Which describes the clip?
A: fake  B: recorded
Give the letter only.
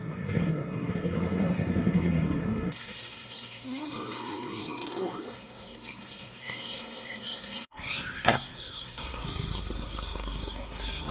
A